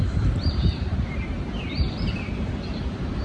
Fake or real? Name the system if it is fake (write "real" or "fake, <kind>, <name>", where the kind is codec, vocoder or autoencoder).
fake, vocoder, BigVGAN v2